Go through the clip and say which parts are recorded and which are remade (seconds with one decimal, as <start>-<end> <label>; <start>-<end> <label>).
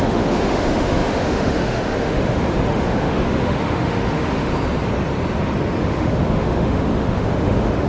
0.0-4.5 remade; 4.5-5.8 recorded; 5.8-7.9 remade